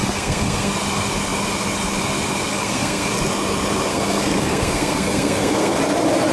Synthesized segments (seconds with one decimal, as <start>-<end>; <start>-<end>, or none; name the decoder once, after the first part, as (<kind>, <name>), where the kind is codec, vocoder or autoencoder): 0.0-0.7 (codec, SNAC); 2.5-3.1; 3.9-5.8